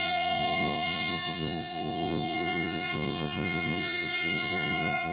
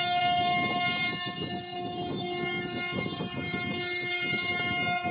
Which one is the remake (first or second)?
first